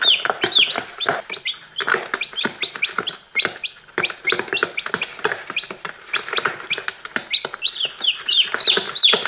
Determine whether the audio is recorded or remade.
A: recorded